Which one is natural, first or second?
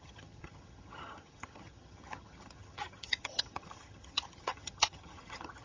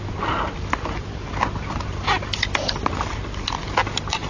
second